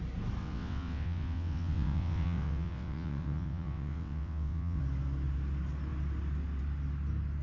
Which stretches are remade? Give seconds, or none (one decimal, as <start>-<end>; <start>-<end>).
0.4-4.8